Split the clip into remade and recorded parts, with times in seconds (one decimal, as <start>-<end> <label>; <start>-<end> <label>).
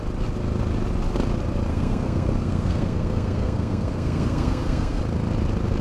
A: 0.0-1.7 recorded; 1.7-5.0 remade; 5.0-5.8 recorded